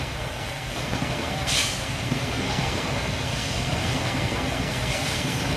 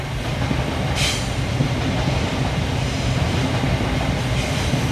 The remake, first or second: first